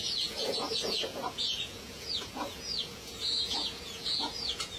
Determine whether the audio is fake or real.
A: fake